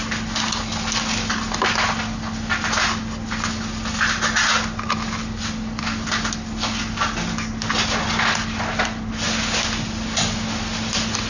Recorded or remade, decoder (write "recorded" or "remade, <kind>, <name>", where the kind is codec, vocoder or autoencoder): recorded